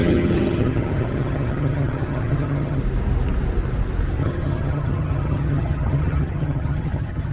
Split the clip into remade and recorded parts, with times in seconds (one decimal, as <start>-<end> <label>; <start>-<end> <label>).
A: 0.0-2.8 remade; 2.8-4.2 recorded; 4.2-7.3 remade